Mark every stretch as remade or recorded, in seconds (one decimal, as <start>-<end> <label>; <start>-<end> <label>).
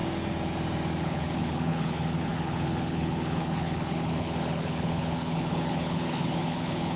0.0-1.0 recorded; 1.0-7.0 remade